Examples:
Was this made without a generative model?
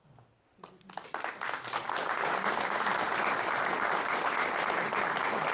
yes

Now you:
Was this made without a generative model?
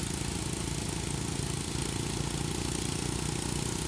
yes